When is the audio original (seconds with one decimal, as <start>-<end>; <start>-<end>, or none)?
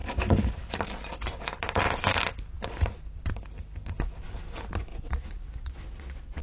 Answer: 0.0-4.9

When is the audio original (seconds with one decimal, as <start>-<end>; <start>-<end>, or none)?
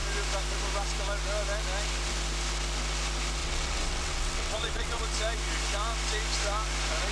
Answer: 0.0-3.4; 5.0-7.1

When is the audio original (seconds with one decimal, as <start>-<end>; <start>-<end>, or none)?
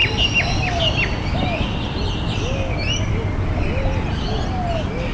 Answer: 0.0-5.1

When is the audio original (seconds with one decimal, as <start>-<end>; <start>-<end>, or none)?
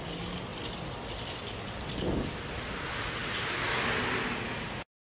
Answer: 0.0-5.2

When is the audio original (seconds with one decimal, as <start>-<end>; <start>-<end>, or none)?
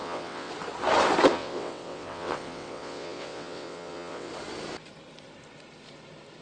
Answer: 0.5-1.3; 4.3-6.4